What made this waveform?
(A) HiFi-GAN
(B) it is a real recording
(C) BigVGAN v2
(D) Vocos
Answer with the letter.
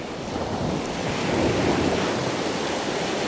B